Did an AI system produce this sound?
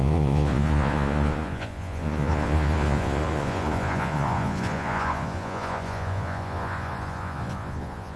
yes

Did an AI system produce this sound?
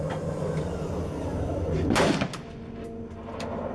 no